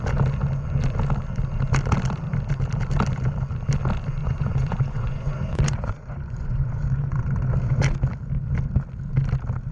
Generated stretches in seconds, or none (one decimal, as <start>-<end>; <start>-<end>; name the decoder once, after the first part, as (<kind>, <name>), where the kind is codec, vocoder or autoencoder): 4.2-7.2 (vocoder, Vocos)